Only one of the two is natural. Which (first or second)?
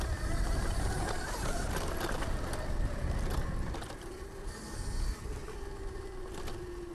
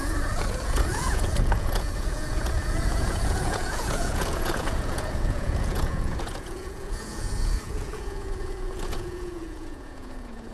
first